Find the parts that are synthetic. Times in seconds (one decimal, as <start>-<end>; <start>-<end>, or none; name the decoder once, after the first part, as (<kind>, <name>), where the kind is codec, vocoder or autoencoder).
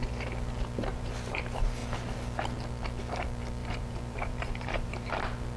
0.9-1.4 (vocoder, BigVGAN v2); 3.6-5.1